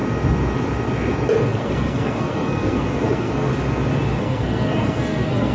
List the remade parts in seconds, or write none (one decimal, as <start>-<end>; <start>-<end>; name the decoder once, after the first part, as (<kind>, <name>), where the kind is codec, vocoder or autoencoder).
1.5-3.5 (codec, SNAC); 4.2-5.5